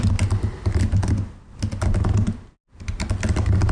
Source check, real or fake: real